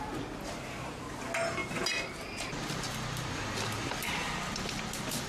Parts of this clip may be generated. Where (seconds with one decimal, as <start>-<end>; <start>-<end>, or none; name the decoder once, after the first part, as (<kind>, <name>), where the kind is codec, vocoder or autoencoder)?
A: none